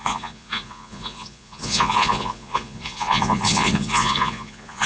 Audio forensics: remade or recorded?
remade